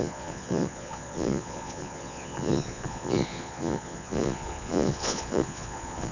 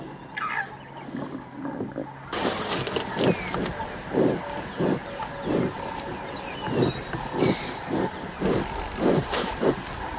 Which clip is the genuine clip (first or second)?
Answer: second